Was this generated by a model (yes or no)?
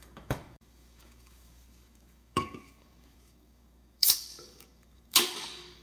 yes